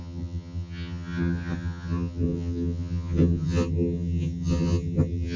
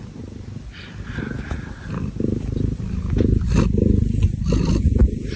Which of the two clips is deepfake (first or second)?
first